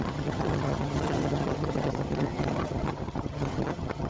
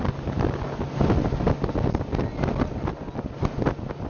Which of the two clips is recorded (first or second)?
second